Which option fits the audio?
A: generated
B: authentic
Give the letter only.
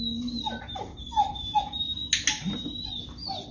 B